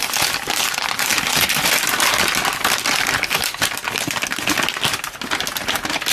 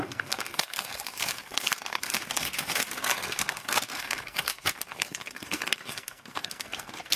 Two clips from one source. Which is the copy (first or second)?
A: second